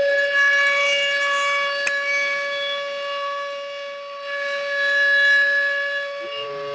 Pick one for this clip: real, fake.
real